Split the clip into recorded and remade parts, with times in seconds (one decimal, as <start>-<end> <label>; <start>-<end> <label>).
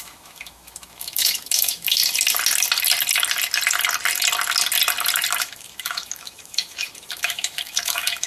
0.0-2.0 remade; 2.0-5.4 recorded; 5.4-8.3 remade